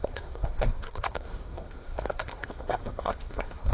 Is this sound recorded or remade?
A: remade